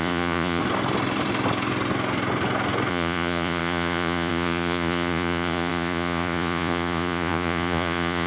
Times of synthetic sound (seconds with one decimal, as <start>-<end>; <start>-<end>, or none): 0.0-0.6; 2.9-8.3